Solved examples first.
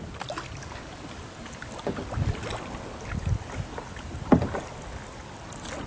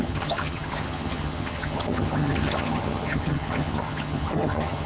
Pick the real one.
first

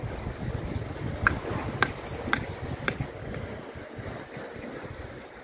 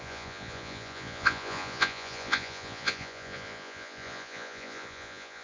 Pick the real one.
first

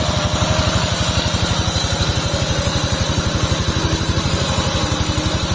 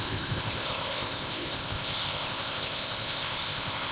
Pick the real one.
first